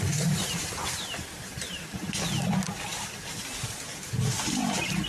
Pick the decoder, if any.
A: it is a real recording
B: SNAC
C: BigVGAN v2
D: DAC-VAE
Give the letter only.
A